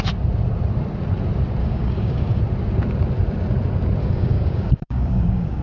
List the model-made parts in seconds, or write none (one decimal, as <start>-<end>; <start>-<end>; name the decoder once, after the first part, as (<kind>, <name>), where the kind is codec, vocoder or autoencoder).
1.6-2.4 (codec, DAC); 4.0-5.6